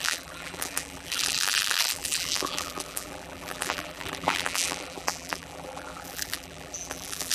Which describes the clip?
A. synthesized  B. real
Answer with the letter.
A